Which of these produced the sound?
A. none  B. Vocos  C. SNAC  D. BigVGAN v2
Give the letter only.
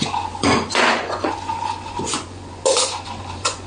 B